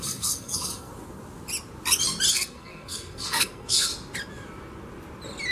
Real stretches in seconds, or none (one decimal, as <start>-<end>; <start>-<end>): 0.9-2.3; 3.9-5.5